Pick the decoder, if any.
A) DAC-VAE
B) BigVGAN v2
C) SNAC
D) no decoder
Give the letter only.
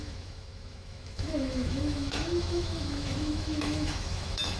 A